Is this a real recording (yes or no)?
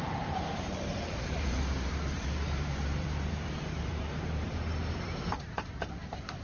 no